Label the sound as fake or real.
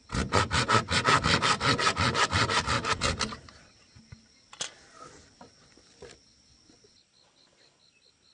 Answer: real